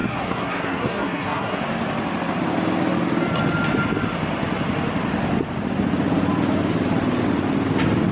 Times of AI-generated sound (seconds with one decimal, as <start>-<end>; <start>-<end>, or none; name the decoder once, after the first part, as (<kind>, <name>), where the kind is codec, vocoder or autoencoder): 0.0-1.6 (codec, SNAC)